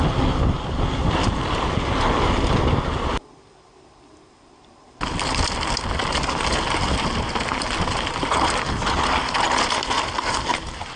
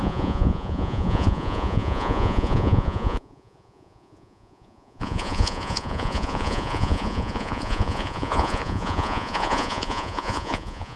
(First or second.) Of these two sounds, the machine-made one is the second